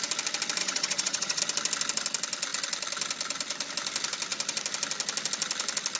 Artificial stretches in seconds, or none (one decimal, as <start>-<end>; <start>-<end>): 0.6-1.4